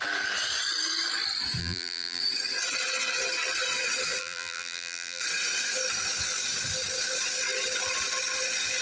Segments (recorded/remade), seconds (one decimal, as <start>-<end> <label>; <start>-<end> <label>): 0.0-1.6 recorded; 1.6-2.2 remade; 2.2-4.2 recorded; 4.2-5.2 remade; 5.2-8.8 recorded